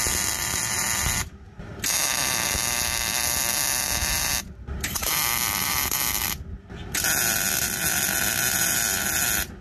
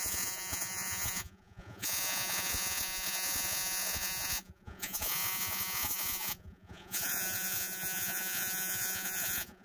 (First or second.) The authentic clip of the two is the first